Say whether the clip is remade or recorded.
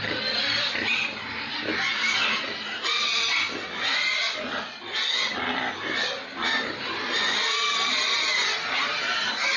recorded